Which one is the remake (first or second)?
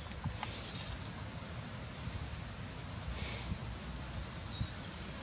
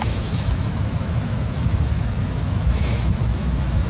second